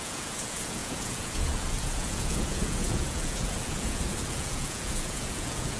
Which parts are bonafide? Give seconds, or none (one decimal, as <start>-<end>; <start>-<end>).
none

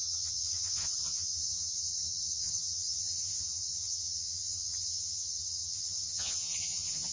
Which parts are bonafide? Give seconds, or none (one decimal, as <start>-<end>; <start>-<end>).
none

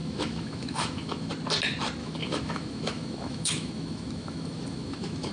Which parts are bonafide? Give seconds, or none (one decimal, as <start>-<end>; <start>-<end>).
1.3-2.0